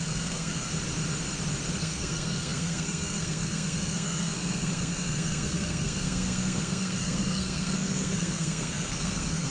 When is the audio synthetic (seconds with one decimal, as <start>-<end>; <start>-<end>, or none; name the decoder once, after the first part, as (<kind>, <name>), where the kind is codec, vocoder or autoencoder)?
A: 0.0-0.7 (codec, SNAC); 1.8-9.5